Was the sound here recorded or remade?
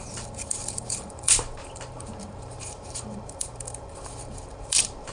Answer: remade